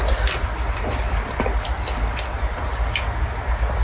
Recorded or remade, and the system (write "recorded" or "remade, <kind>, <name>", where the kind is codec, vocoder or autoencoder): recorded